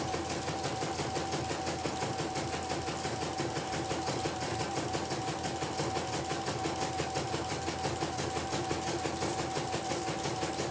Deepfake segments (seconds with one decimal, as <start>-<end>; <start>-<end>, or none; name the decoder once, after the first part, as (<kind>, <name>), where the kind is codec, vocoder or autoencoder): none